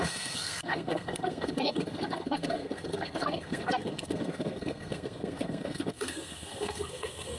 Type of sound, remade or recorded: remade